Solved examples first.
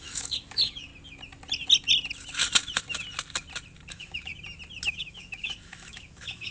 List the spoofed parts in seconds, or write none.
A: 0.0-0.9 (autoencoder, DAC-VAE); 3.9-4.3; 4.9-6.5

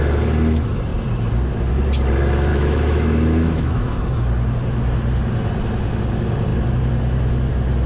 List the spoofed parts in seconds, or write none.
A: 2.5-4.0 (autoencoder, DAC-VAE)

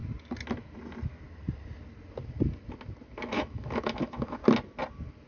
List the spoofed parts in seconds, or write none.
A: 3.2-4.4 (autoencoder, DAC-VAE)